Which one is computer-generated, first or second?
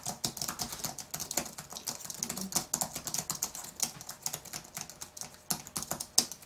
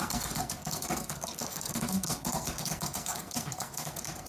second